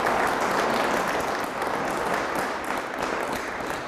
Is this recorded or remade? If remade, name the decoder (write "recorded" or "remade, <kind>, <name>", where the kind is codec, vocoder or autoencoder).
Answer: recorded